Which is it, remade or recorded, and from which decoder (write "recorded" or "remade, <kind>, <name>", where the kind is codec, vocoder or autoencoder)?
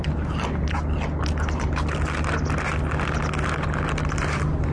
recorded